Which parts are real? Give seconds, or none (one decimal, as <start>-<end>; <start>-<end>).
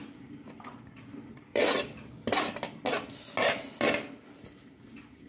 1.6-4.8